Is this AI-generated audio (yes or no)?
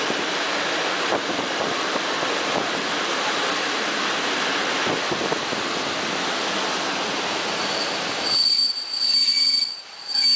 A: no